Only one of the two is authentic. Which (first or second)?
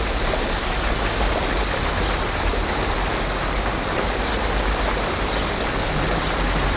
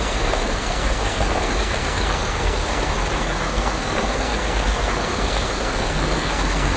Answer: first